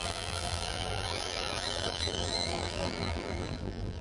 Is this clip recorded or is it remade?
remade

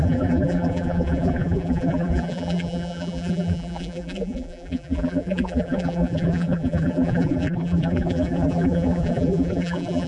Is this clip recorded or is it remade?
remade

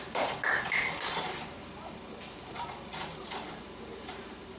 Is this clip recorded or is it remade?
remade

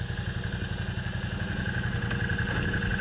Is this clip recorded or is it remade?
recorded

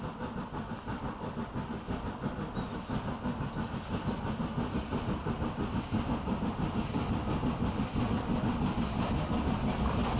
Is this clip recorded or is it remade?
recorded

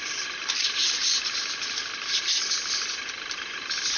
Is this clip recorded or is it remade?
remade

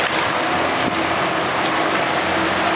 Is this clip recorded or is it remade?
recorded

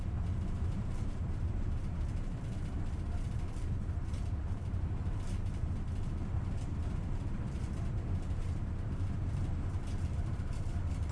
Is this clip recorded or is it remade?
remade